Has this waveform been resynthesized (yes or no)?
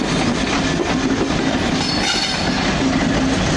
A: no